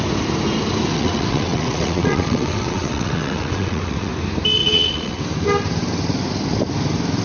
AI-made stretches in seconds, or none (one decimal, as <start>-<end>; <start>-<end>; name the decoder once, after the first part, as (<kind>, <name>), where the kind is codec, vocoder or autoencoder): 0.9-4.1 (vocoder, WaveNeXt); 4.6-5.2